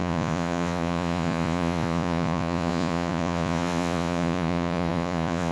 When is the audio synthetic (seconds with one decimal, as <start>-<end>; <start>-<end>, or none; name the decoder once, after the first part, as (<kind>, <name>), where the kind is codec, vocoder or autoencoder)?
0.0-5.5 (vocoder, Vocos)